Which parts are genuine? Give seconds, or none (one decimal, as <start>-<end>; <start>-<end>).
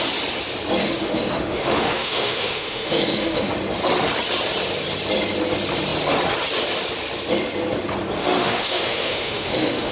0.0-0.8; 3.5-8.2